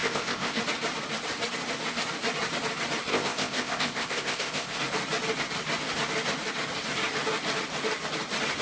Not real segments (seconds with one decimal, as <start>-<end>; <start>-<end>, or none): 0.0-0.6; 3.1-4.8